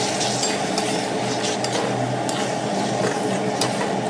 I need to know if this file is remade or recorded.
recorded